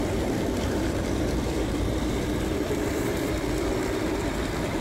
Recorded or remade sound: remade